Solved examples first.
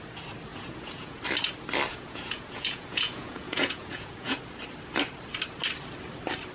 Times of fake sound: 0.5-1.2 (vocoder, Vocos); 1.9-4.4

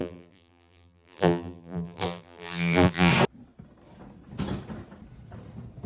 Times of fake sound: 0.0-3.1 (vocoder, BigVGAN v2)

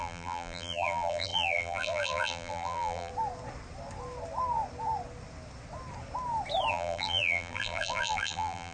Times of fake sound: 0.0-3.1 (vocoder, BigVGAN v2); 6.7-8.7

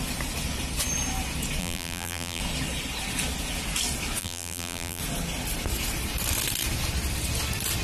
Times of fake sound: 1.6-2.4 (vocoder, BigVGAN v2); 4.2-5.0

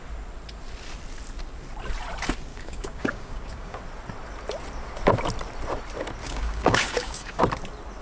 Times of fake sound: 2.5-3.8 (codec, DAC); 6.2-7.4

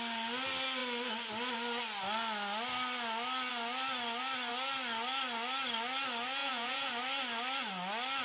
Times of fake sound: 6.4-6.9 (vocoder, Vocos)